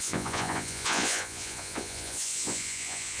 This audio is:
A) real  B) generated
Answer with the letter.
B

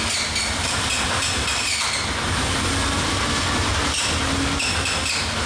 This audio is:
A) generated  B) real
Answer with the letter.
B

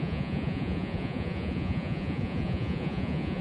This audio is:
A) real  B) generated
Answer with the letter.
B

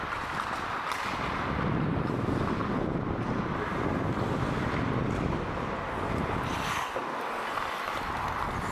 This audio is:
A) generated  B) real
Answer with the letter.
B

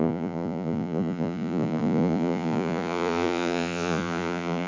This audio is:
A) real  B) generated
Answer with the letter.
B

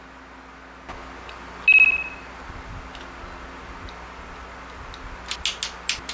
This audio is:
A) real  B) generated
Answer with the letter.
A